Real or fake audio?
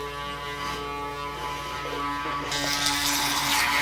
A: real